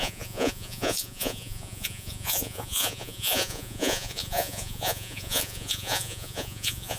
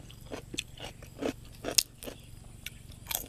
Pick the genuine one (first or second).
second